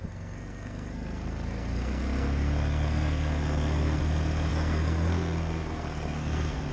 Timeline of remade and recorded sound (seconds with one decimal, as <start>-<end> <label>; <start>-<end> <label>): 0.0-4.0 remade; 4.0-4.5 recorded; 4.5-6.7 remade